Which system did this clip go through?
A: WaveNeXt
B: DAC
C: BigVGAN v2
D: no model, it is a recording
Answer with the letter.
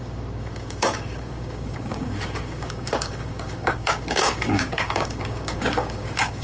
B